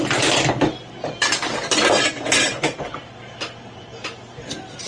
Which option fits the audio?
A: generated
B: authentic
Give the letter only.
B